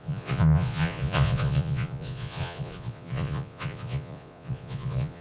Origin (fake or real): fake